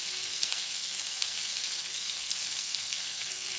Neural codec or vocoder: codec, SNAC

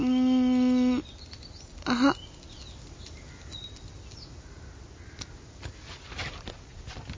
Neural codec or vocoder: none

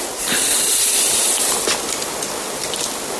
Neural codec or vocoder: none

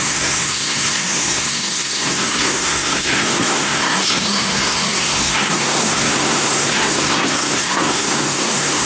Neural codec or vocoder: codec, SNAC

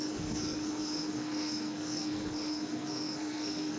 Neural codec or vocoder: codec, SNAC